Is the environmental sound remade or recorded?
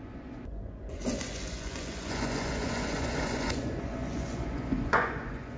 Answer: remade